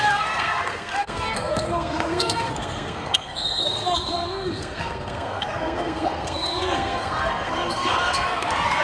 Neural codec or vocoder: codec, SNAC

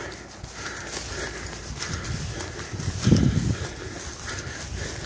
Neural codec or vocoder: none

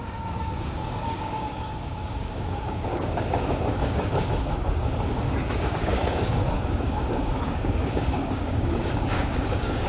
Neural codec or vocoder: codec, DAC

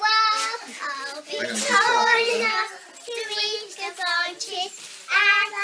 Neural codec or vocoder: none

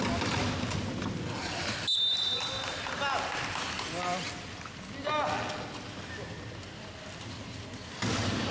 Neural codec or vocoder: none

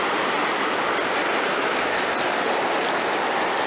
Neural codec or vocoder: none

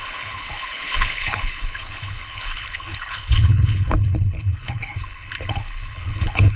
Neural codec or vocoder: codec, HILCodec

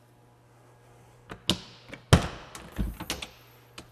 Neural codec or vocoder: none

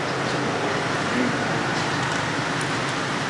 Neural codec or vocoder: none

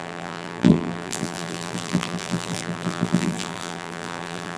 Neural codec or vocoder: vocoder, BigVGAN v2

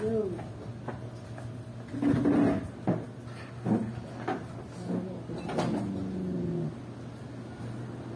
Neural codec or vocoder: none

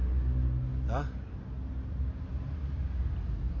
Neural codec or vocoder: none